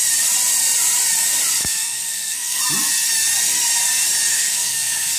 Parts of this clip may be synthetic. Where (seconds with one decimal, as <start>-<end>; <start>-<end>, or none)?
1.6-2.6; 4.3-5.2

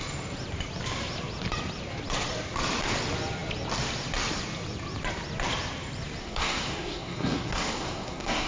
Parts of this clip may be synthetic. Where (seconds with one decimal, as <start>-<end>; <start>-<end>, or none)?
6.2-8.5

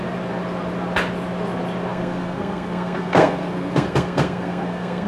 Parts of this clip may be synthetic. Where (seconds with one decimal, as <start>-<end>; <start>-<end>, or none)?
1.9-5.1

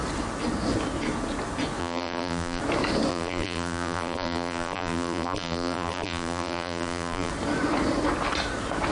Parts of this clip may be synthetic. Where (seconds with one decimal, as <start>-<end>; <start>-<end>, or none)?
1.8-2.6; 3.1-7.3

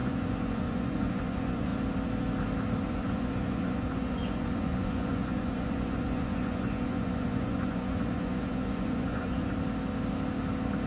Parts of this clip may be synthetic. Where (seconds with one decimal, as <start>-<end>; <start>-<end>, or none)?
0.0-1.7; 2.9-9.5

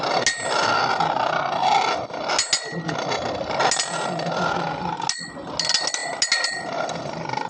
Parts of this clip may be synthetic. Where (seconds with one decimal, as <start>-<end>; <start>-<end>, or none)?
none

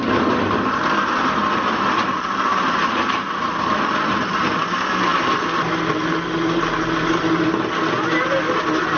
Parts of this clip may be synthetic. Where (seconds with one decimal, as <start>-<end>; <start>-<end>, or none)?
none